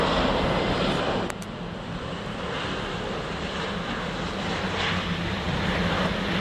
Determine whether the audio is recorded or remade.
recorded